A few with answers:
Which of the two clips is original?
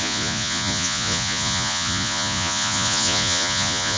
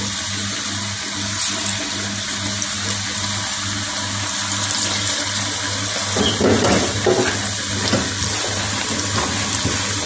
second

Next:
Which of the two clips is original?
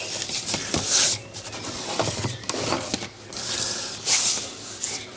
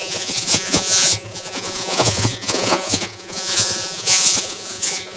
first